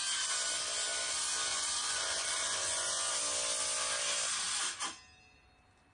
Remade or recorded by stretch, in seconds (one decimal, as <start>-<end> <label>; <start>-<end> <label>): 0.0-1.5 recorded; 1.5-3.1 remade; 3.1-5.9 recorded